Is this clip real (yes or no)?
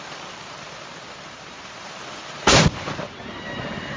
no